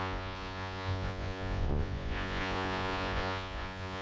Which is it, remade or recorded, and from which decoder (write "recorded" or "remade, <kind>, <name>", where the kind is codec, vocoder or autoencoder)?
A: remade, vocoder, Vocos